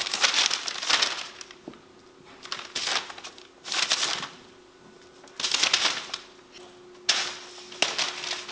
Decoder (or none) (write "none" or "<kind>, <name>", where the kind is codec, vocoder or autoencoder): none